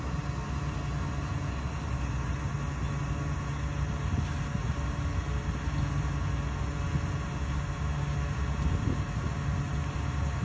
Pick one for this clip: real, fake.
real